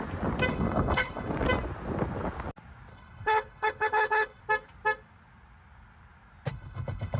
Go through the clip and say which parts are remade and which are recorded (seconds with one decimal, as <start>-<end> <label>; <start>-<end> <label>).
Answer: 0.0-0.5 recorded; 0.5-1.3 remade; 1.3-2.9 recorded; 2.9-4.4 remade; 4.4-6.5 recorded; 6.5-7.2 remade